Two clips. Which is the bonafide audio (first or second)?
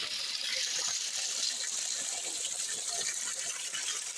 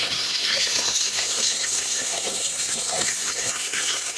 first